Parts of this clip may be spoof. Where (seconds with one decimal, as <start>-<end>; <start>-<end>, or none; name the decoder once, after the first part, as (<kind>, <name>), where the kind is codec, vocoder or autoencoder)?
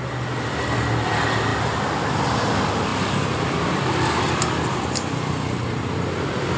none